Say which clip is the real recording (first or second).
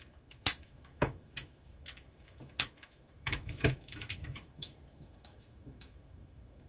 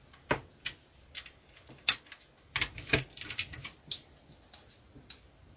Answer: second